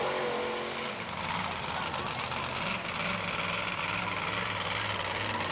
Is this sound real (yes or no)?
yes